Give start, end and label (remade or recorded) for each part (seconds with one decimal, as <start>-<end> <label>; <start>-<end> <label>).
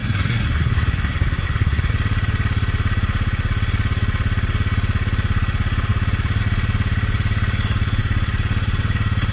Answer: 0.0-1.9 remade; 1.9-9.3 recorded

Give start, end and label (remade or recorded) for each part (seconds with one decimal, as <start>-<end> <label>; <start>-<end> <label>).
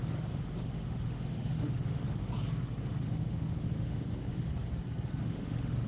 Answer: 0.0-2.2 remade; 2.2-2.8 recorded; 2.8-4.5 remade; 4.5-5.2 recorded; 5.2-5.9 remade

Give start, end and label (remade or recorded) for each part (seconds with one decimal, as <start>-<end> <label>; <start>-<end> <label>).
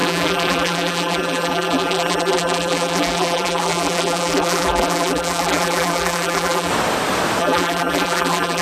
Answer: 0.0-6.7 remade; 6.7-7.4 recorded; 7.4-8.6 remade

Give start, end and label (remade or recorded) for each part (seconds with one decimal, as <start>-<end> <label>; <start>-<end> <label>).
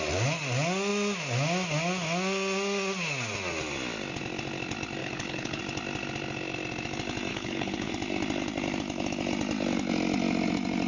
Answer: 0.0-5.0 recorded; 5.0-5.6 remade; 5.6-7.3 recorded; 7.3-7.9 remade; 7.9-10.9 recorded